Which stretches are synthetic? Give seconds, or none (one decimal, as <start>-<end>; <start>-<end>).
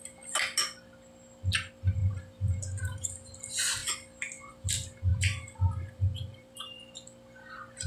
2.0-3.3; 5.1-6.8